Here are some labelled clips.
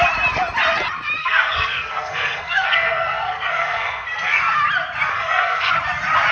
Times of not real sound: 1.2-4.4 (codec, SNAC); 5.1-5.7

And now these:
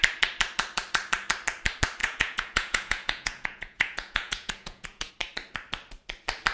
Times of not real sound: 2.0-5.1 (vocoder, Vocos)

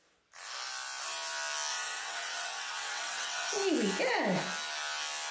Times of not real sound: 1.7-3.5 (vocoder, WaveNeXt)

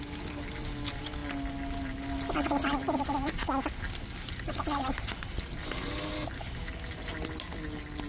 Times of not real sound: none

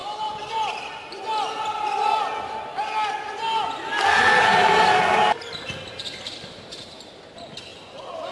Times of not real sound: 4.0-7.7 (vocoder, BigVGAN v2)

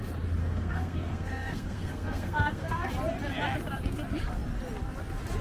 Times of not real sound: 0.4-2.9 (codec, SNAC)

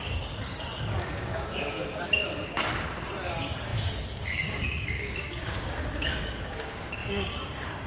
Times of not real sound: 0.0-2.5 (codec, DAC); 3.3-7.9